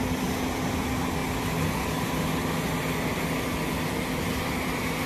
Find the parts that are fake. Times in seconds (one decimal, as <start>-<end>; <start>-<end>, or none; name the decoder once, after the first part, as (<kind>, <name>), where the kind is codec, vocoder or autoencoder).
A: none